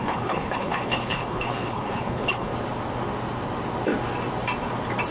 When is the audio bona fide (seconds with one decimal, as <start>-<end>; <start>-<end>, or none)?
2.5-5.1